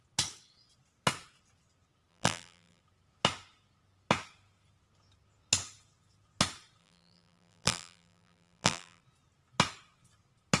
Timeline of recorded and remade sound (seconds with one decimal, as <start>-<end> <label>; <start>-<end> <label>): 0.0-2.1 recorded; 2.1-2.8 remade; 2.8-6.8 recorded; 6.8-9.0 remade; 9.0-10.6 recorded